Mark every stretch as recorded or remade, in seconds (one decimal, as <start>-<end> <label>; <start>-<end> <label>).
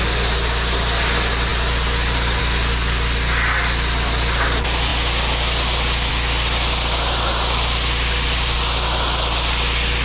0.0-10.0 recorded